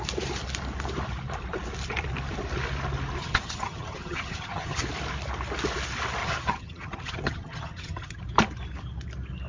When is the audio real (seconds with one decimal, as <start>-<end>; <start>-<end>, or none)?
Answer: 0.0-3.2; 4.8-6.2; 8.2-9.5